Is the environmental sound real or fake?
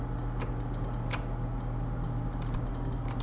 real